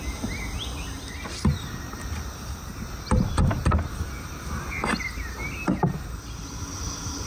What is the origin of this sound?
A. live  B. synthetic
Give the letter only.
A